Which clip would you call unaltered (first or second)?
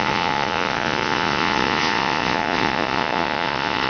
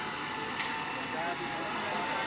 second